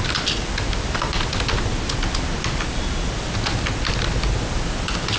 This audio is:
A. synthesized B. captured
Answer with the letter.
B